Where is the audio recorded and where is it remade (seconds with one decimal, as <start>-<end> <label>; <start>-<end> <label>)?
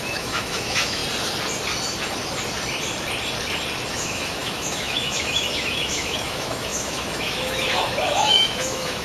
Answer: 0.0-1.0 remade; 1.0-3.9 recorded; 3.9-9.0 remade